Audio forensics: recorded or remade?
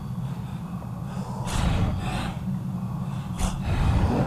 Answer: recorded